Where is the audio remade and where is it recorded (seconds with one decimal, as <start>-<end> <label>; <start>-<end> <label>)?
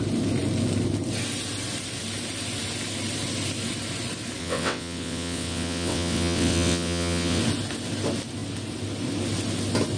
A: 0.0-4.4 recorded; 4.4-7.4 remade; 7.4-10.0 recorded